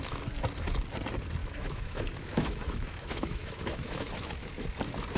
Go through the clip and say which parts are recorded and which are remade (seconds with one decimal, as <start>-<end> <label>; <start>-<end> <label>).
0.0-1.4 recorded; 1.4-4.5 remade; 4.5-5.2 recorded